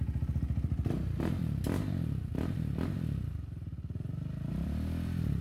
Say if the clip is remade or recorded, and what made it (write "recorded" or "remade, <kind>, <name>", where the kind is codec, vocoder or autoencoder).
remade, vocoder, BigVGAN v2